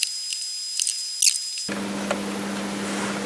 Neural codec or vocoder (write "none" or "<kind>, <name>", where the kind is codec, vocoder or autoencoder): none